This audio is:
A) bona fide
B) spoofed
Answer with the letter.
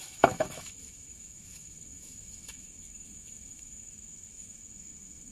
B